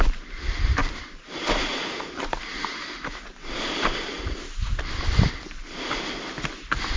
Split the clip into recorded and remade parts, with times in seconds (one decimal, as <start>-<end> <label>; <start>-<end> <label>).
0.0-0.8 recorded; 0.8-5.0 remade; 5.0-7.0 recorded